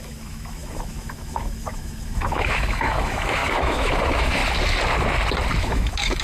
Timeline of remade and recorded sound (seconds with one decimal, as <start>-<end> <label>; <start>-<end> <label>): 0.0-4.4 remade; 4.4-5.6 recorded; 5.6-6.2 remade